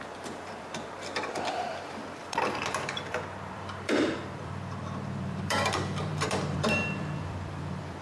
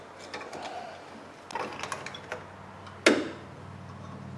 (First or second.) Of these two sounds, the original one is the second